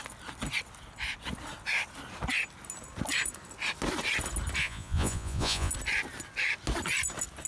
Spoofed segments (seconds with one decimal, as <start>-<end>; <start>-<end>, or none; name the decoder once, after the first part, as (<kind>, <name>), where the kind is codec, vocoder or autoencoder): 4.6-5.7 (vocoder, Vocos)